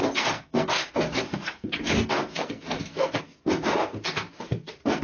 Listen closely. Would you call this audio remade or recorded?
remade